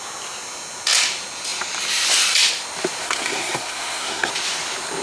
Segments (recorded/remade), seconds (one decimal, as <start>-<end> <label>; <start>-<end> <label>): 0.0-3.0 recorded; 3.0-4.3 remade; 4.3-5.0 recorded